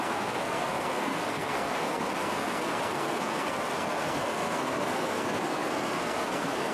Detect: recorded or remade remade